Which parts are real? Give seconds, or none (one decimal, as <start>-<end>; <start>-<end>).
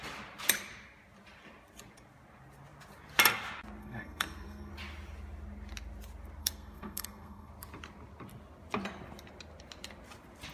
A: 0.0-3.8; 4.7-6.4; 7.5-10.5